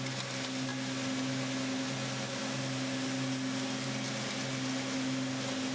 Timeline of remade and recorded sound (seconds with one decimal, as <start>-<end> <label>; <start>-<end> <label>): 0.0-5.7 recorded